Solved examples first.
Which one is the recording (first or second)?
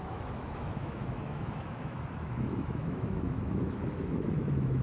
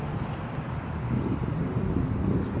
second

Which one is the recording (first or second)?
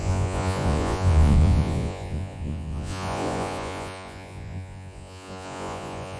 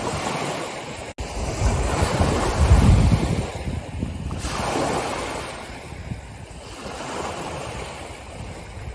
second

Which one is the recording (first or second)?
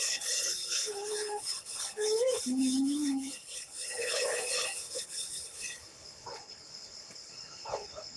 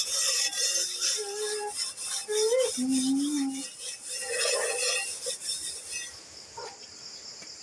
second